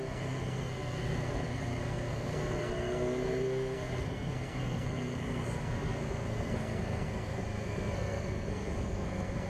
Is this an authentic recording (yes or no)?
no